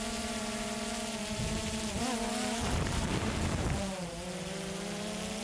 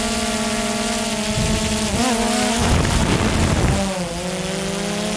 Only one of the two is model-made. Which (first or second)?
first